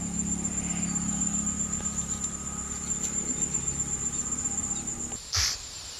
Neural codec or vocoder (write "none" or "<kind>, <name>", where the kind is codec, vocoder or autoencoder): none